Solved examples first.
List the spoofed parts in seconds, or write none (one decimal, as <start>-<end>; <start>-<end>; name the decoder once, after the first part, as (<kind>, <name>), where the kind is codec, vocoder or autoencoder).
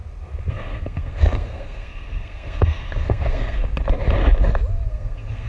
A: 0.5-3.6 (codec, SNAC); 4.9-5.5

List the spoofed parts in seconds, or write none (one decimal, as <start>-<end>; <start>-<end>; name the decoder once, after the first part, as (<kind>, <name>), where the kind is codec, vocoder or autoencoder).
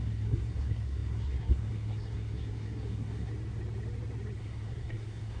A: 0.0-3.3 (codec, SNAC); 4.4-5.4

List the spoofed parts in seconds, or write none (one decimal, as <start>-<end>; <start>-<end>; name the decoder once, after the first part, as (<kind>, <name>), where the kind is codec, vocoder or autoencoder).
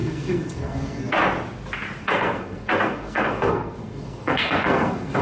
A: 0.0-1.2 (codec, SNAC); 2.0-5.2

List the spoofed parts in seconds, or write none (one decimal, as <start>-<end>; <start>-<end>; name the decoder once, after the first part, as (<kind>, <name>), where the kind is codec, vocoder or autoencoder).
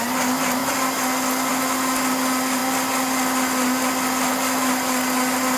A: none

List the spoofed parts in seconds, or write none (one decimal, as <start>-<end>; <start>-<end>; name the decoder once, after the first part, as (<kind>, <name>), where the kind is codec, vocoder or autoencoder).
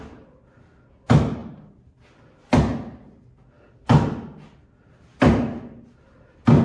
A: none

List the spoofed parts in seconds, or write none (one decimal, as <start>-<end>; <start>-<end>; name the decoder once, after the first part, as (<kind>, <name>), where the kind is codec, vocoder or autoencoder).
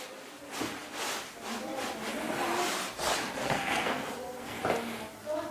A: 3.4-4.6 (codec, SNAC)